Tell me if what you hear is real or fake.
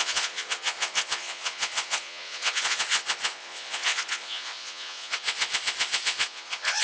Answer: fake